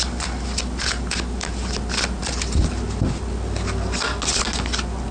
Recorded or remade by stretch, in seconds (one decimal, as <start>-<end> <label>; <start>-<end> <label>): 0.0-5.1 recorded